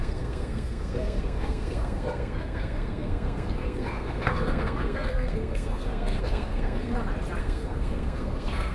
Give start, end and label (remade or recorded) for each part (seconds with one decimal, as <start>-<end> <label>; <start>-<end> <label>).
0.0-6.9 remade; 6.9-7.4 recorded; 7.4-8.7 remade